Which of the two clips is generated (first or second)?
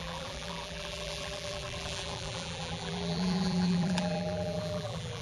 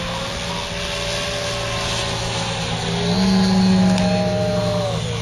first